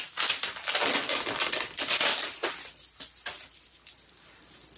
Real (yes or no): yes